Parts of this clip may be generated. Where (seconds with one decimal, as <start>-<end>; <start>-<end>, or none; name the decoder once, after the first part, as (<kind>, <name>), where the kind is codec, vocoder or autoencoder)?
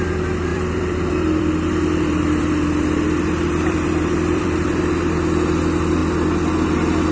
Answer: 0.5-4.8 (vocoder, BigVGAN v2)